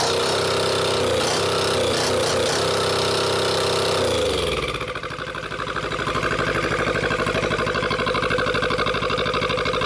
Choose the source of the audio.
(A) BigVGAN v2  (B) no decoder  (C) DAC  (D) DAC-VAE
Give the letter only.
B